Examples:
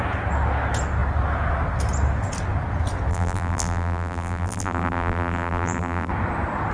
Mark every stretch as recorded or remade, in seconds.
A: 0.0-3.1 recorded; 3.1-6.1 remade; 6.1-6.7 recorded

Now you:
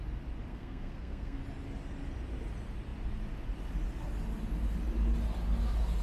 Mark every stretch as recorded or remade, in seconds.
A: 0.0-0.5 recorded; 0.5-1.4 remade; 1.4-6.0 recorded

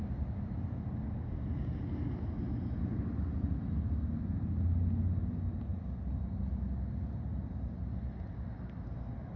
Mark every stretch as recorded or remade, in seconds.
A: 0.0-9.4 recorded

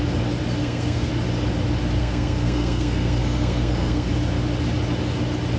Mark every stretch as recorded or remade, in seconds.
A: 0.0-0.6 recorded; 0.6-1.1 remade; 1.1-2.0 recorded; 2.0-4.1 remade; 4.1-5.6 recorded